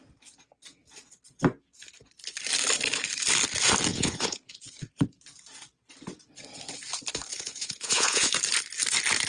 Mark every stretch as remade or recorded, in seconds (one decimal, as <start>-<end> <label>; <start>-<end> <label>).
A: 0.0-3.9 recorded; 3.9-4.7 remade; 4.7-7.3 recorded; 7.3-8.3 remade; 8.3-9.3 recorded